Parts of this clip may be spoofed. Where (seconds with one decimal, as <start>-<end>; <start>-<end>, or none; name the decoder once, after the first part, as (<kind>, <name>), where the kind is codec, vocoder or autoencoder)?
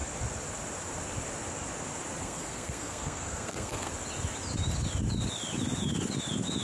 2.2-3.9 (codec, SNAC)